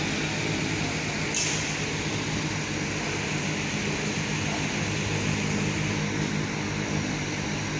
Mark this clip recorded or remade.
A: recorded